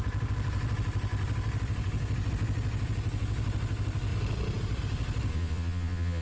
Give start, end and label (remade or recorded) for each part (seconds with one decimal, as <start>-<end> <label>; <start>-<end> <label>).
0.0-5.3 recorded; 5.3-6.2 remade